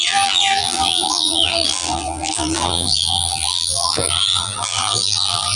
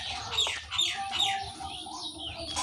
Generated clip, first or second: first